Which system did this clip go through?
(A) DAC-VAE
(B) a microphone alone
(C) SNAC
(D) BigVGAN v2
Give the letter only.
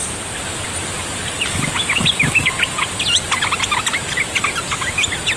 B